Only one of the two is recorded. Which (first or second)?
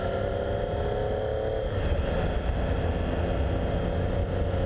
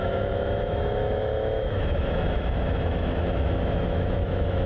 first